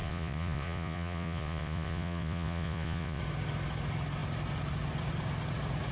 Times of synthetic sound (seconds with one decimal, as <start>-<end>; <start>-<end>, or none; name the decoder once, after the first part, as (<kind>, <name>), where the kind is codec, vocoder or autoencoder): 0.0-3.2 (vocoder, Vocos)